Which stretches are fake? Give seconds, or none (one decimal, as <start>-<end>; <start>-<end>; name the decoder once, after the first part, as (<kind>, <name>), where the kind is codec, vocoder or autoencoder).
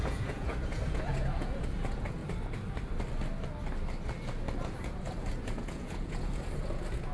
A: 0.0-2.2 (vocoder, Vocos); 4.6-7.1